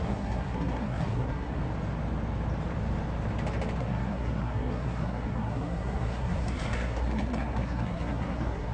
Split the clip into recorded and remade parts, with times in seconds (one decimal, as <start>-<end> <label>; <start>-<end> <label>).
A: 0.0-1.6 remade; 1.6-3.8 recorded; 3.8-8.7 remade